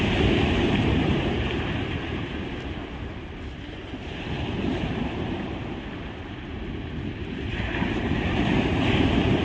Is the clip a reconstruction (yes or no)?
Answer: yes